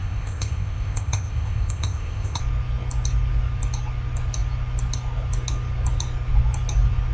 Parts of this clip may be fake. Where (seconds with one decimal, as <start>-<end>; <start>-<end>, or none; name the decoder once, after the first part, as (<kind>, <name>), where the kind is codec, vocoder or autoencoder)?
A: 0.0-2.4 (codec, ZipCodec)